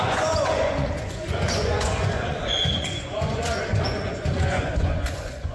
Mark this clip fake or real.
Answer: fake